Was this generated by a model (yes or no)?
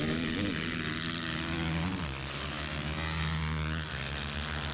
no